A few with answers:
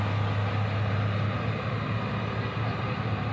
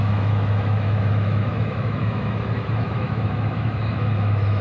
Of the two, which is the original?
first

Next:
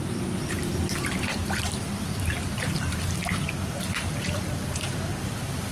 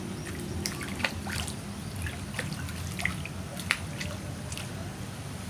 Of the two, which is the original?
second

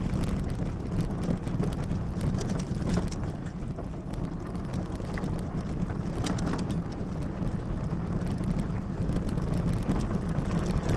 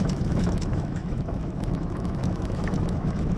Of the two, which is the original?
first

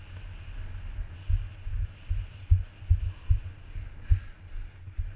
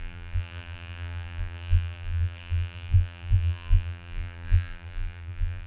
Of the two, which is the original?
first